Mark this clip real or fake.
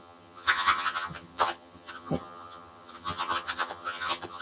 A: fake